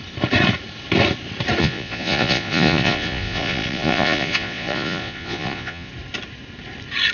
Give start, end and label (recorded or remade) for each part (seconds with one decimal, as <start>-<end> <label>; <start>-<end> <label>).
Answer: 0.0-1.6 recorded; 1.6-5.9 remade; 5.9-7.1 recorded